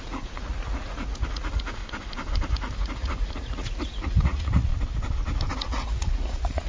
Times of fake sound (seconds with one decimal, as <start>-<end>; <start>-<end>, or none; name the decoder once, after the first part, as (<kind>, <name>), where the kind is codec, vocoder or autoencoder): 0.0-1.8 (vocoder, Vocos); 2.5-4.7; 5.5-6.7